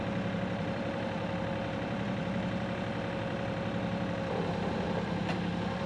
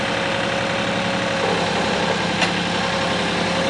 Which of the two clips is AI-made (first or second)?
first